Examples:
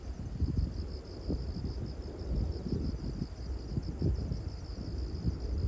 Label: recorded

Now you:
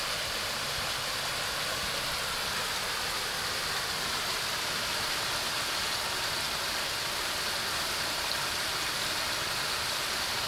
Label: recorded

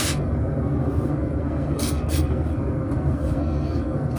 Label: remade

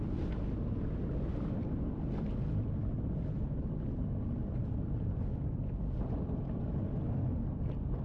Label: recorded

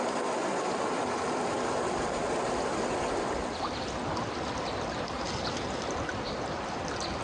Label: recorded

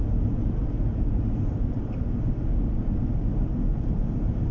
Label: recorded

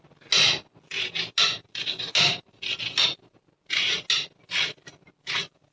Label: recorded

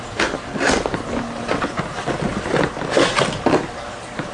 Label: recorded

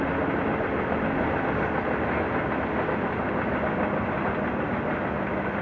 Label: recorded